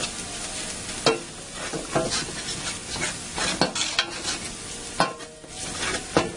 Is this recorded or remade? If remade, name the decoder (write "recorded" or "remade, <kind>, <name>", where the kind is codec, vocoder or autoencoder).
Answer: recorded